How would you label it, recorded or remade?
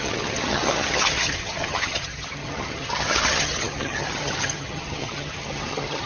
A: remade